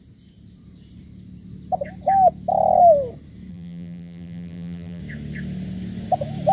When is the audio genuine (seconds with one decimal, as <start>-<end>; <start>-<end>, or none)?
0.0-3.5; 5.0-6.5